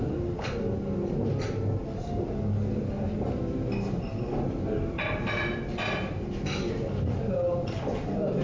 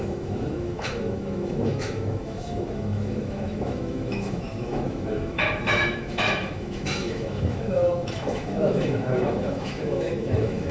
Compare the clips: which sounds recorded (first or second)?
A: first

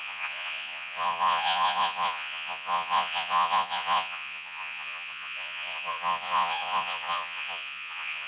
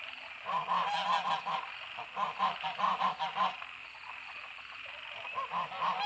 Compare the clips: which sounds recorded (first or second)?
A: second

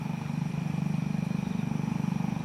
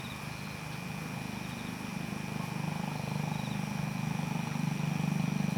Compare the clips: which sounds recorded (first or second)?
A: second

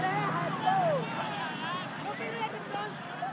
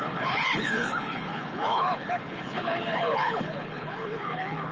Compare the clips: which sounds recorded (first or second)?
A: first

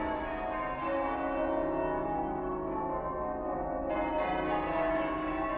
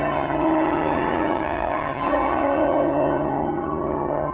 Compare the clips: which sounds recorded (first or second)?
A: first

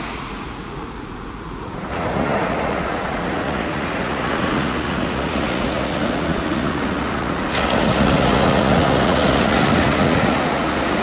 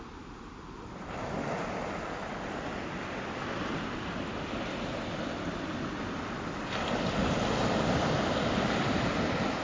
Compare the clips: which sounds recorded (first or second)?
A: second